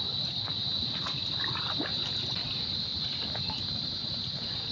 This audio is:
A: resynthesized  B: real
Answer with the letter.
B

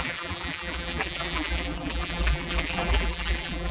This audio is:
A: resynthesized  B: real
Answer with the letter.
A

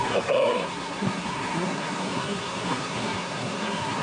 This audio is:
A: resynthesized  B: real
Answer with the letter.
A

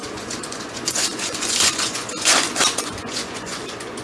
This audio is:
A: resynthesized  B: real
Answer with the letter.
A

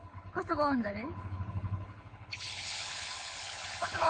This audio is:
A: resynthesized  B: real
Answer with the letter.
A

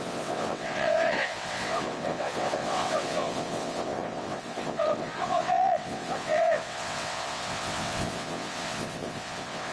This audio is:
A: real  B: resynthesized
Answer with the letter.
B